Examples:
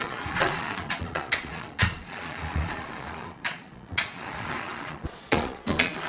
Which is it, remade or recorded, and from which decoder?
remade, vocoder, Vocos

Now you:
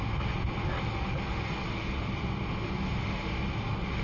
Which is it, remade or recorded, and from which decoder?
recorded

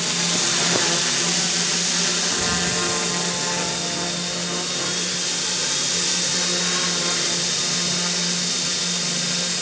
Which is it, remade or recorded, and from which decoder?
recorded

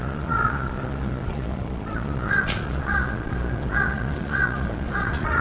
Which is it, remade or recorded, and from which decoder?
remade, vocoder, Vocos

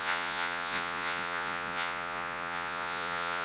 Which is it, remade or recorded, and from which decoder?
remade, vocoder, Vocos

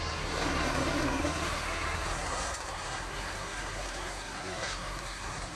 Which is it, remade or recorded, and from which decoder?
remade, codec, SNAC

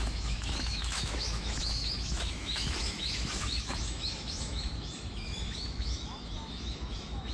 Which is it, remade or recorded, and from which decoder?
remade, autoencoder, DAC-VAE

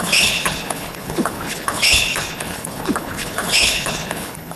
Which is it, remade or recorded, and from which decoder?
remade, codec, HILCodec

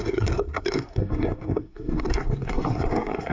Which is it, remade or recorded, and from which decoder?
remade, codec, SNAC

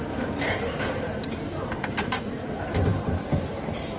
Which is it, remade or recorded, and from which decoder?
remade, vocoder, BigVGAN v2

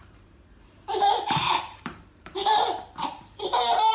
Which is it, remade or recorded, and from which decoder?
remade, vocoder, BigVGAN v2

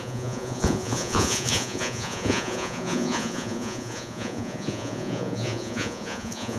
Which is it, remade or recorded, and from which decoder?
remade, vocoder, Vocos